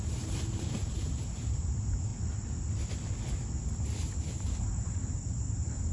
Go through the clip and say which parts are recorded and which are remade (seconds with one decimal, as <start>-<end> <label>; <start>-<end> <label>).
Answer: 0.0-2.1 remade; 2.1-3.8 recorded; 3.8-5.9 remade